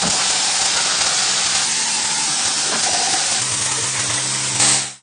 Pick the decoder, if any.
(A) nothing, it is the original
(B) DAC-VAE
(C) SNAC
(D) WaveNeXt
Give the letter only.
A